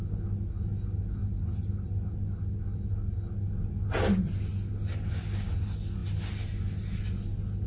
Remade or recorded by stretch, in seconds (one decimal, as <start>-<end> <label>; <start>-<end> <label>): 0.0-7.7 recorded